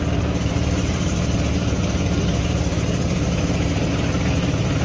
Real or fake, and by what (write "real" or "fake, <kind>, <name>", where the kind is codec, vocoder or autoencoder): real